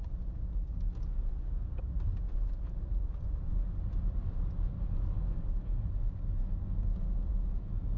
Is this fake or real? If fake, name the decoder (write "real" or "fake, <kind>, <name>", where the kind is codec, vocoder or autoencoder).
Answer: real